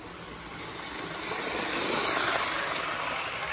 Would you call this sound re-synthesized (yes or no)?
no